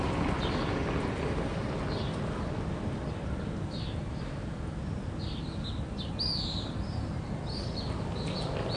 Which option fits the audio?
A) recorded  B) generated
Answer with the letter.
A